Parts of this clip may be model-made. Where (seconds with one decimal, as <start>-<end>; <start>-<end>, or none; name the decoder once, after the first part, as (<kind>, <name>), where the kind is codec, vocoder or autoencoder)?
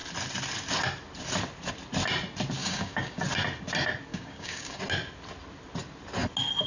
2.6-3.2 (codec, DAC); 4.1-4.8